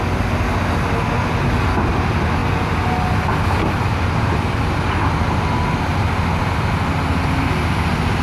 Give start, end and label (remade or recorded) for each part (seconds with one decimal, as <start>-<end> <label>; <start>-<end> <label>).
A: 0.0-8.2 recorded